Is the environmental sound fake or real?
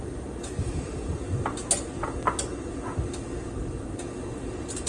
real